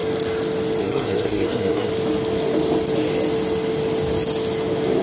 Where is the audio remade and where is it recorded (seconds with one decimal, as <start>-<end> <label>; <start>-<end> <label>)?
0.0-0.8 recorded; 0.8-1.9 remade; 1.9-5.0 recorded